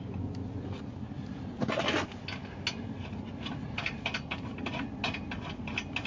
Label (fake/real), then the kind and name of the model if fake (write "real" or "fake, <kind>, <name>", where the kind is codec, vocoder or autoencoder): real